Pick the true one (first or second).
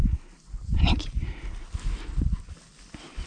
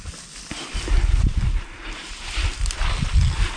first